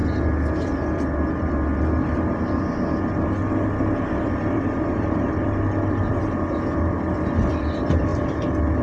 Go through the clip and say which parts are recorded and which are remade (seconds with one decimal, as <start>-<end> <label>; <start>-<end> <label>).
0.0-4.3 recorded; 4.3-8.8 remade